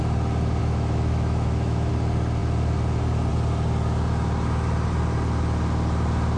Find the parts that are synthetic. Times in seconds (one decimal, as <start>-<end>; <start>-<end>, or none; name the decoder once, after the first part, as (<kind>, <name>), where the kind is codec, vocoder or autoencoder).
0.6-1.9 (autoencoder, DAC-VAE)